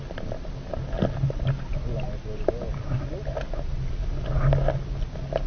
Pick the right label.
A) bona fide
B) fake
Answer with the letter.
A